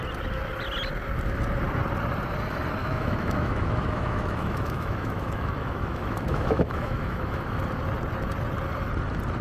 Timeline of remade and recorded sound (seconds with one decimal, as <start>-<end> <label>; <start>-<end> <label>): 0.0-2.8 recorded; 2.8-7.6 remade; 7.6-9.4 recorded